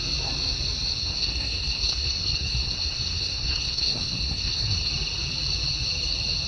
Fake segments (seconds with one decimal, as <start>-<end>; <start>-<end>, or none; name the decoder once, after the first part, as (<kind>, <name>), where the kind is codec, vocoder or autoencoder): 1.0-4.9 (codec, SNAC)